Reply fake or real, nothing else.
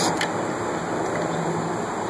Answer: real